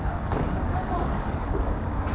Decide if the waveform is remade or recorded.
remade